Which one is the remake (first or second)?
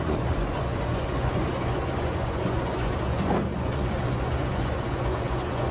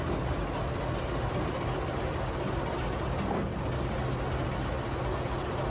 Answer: first